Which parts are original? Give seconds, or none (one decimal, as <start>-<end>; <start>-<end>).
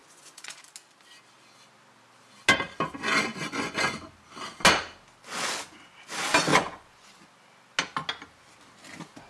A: 0.6-3.3; 4.2-6.5; 7.1-9.3